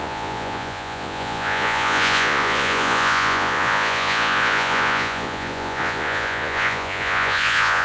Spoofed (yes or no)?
yes